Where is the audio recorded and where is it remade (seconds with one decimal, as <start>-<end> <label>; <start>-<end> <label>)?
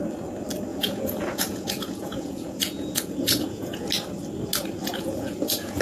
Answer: 0.0-0.7 recorded; 0.7-3.9 remade; 3.9-4.8 recorded; 4.8-5.8 remade